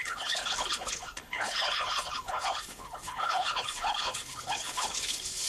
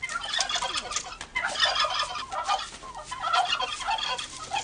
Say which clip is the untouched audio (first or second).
second